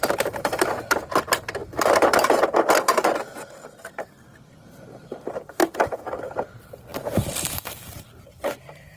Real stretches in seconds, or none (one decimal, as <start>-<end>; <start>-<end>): 1.6-5.1